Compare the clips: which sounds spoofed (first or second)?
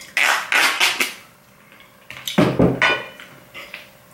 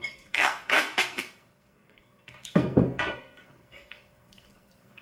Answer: second